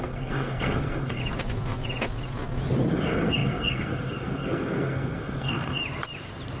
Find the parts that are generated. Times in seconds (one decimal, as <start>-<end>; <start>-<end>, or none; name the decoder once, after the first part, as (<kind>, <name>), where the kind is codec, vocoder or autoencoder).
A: 0.0-1.2 (codec, SNAC); 2.9-5.8